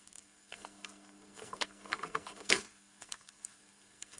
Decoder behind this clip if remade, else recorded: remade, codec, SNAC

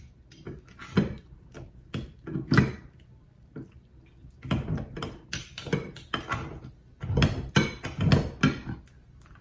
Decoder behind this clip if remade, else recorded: recorded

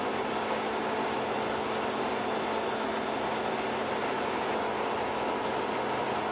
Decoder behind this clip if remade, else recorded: recorded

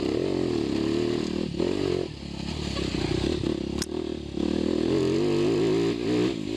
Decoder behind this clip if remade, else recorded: recorded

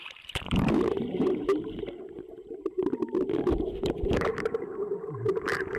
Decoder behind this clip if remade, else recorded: remade, vocoder, BigVGAN v2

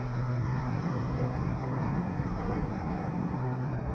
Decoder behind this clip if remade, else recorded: remade, codec, SNAC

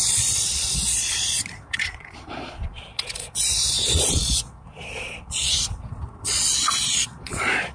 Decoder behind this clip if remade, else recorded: remade, vocoder, Vocos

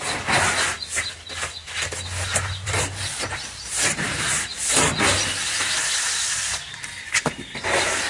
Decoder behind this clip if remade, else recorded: recorded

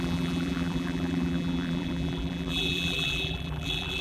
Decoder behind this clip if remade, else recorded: remade, vocoder, BigVGAN v2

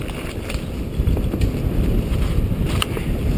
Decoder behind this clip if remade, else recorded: recorded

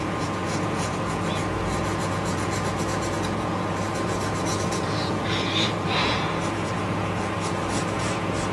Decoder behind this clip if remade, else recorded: remade, vocoder, Vocos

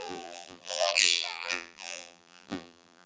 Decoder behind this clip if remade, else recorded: remade, vocoder, BigVGAN v2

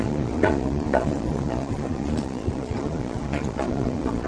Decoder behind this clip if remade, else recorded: remade, vocoder, Vocos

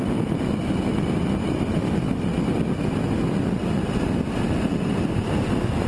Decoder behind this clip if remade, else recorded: recorded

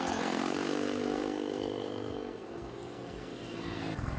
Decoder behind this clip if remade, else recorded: remade, codec, SNAC